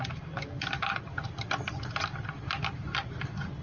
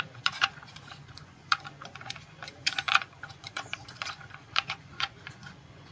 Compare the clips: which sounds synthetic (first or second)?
second